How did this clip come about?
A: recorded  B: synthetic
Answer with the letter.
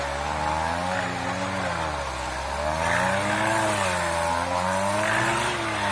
A